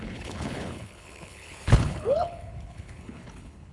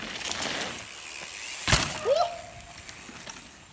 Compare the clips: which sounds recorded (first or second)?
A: second